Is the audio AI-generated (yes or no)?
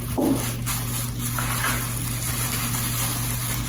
no